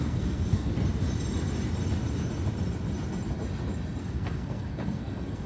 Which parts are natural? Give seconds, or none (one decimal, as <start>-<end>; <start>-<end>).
0.7-4.0